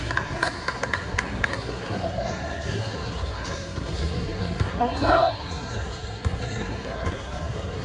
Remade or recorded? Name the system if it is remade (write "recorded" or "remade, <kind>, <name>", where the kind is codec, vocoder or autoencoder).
remade, codec, SNAC